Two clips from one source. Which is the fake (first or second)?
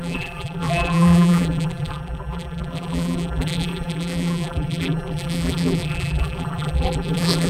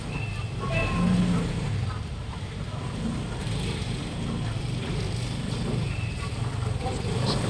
first